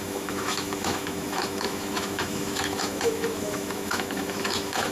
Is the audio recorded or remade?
remade